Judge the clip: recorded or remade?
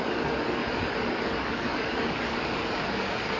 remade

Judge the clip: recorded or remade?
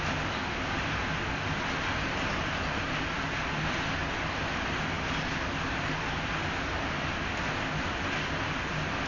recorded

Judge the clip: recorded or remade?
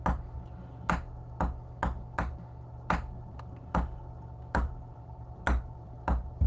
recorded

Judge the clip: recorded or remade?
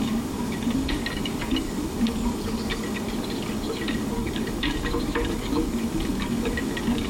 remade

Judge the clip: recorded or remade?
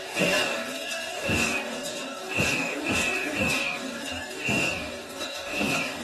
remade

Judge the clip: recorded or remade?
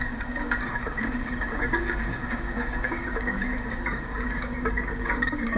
remade